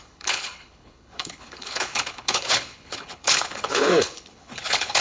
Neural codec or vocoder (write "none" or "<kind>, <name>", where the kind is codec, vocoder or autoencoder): codec, HILCodec